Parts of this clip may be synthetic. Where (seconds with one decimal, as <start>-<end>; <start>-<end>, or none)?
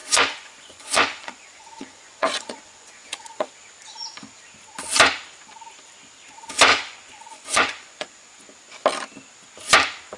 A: 0.0-3.5; 6.7-8.4